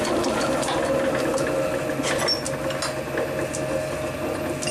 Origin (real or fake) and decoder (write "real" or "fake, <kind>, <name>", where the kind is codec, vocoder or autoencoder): real